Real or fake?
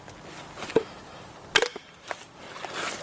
real